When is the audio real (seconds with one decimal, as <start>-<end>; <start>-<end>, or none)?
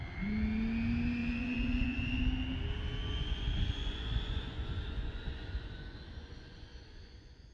0.0-1.2; 2.2-3.0